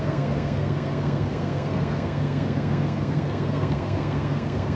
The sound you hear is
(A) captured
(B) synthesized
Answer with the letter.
B